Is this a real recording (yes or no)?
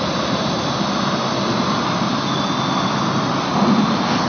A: yes